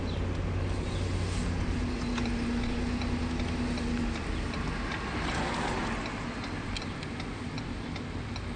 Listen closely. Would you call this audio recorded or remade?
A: recorded